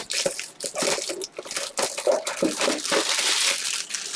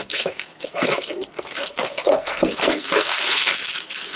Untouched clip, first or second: first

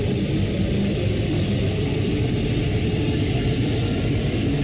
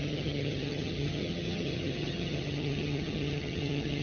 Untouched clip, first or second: first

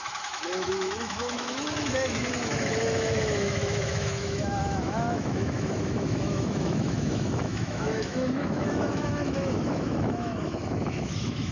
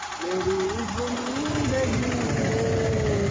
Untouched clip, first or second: second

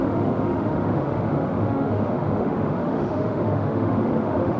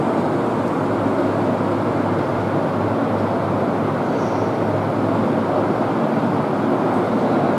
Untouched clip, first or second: second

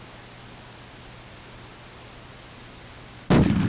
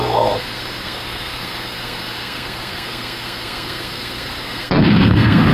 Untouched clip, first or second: first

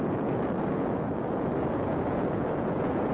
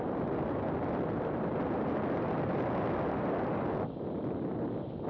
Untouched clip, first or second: second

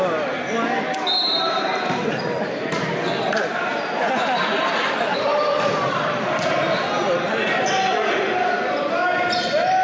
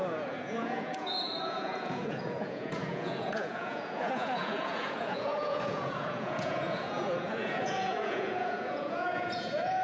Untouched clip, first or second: first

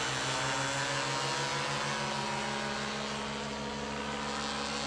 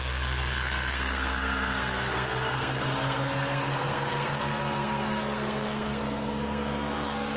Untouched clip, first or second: first